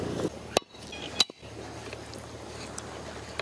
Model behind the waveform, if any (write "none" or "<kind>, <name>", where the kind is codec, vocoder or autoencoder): none